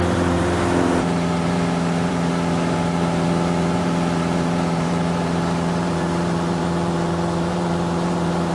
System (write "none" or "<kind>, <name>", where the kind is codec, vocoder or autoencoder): vocoder, BigVGAN v2